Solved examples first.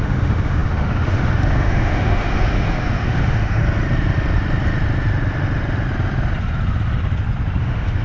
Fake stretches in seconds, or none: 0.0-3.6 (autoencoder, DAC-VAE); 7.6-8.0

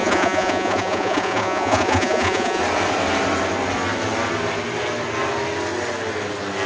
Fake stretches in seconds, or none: 0.0-2.6 (vocoder, Vocos)